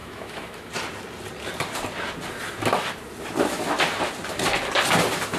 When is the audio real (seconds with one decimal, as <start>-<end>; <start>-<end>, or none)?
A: 0.7-5.4